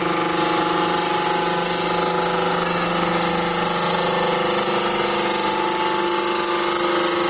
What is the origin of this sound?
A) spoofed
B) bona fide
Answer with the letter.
B